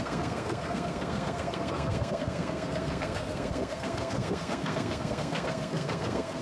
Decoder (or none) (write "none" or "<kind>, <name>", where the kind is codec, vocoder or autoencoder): codec, SNAC